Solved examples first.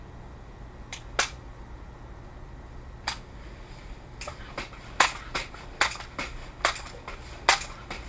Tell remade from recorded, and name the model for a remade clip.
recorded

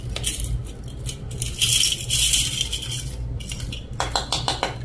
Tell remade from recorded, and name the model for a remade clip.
recorded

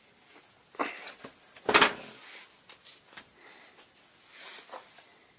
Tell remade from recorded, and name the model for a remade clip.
recorded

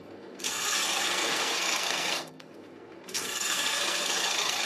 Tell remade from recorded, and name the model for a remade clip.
remade, codec, SNAC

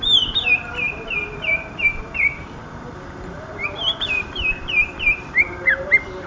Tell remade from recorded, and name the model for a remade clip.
remade, vocoder, BigVGAN v2